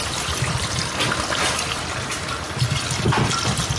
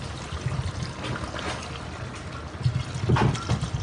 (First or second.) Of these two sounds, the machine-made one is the first